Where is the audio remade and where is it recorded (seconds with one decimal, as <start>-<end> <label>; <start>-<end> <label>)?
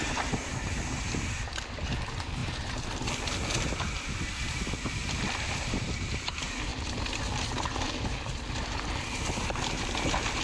0.0-10.4 recorded